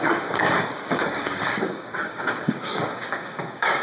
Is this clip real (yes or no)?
no